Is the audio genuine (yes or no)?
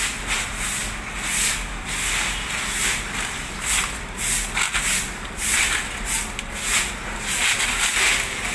yes